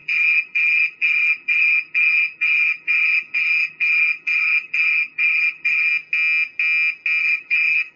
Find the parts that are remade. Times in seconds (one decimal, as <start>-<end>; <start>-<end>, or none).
0.0-5.9; 7.2-8.0